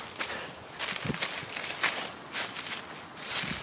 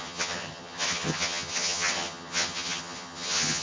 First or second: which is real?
first